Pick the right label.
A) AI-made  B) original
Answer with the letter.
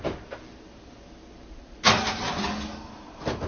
B